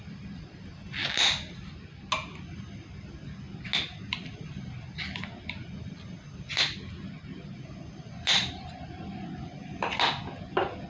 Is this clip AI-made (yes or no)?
no